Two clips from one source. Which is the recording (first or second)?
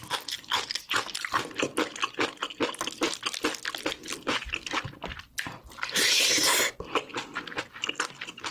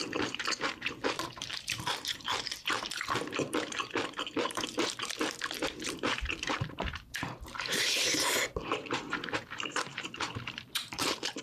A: first